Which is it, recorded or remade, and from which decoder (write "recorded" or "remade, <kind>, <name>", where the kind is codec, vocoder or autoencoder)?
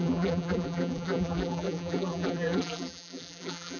remade, vocoder, BigVGAN v2